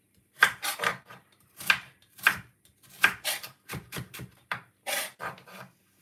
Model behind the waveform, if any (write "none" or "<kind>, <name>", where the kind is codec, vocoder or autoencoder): vocoder, BigVGAN v2